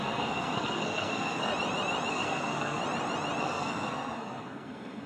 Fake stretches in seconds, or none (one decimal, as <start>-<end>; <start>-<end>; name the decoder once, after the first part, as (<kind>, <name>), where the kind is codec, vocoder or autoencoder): 0.0-1.5 (codec, SNAC); 2.1-2.8; 3.4-5.1